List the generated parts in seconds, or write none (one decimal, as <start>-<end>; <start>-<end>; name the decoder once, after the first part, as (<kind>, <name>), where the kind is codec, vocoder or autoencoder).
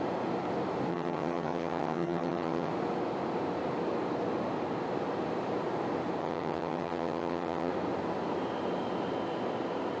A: 0.9-2.7 (vocoder, HiFi-GAN); 6.2-7.7